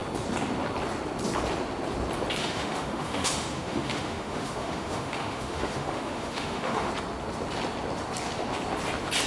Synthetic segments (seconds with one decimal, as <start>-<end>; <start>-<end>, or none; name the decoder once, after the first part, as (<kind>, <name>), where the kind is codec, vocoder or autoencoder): 2.4-6.9 (autoencoder, DAC-VAE)